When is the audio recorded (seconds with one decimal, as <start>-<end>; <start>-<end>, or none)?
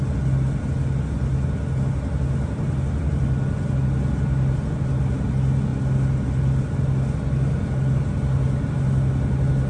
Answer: 0.0-9.7